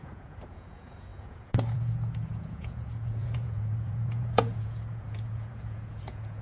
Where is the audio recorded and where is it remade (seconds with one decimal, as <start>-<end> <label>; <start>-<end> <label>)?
0.0-6.4 remade